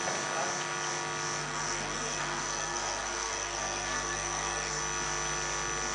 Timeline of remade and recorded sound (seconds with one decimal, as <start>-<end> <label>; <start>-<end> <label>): 0.0-1.4 recorded; 1.4-4.8 remade; 4.8-5.9 recorded